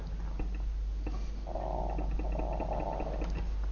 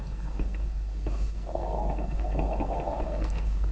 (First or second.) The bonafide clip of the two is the first